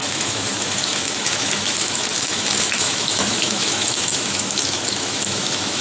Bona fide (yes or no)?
no